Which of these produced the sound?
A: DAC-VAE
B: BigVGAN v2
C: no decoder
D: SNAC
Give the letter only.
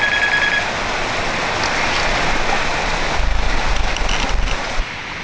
C